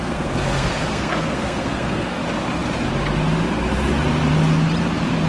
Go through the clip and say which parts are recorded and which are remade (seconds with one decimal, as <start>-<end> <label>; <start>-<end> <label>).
0.0-2.2 remade; 2.2-5.3 recorded